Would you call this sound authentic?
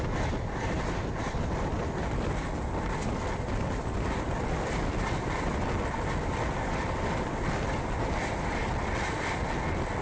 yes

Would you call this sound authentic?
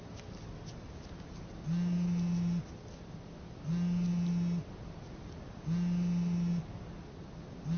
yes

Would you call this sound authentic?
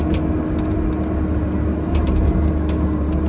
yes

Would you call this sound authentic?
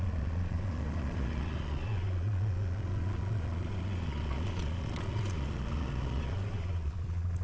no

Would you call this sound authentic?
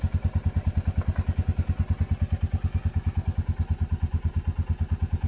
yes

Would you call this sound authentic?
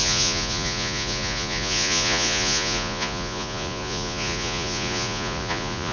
no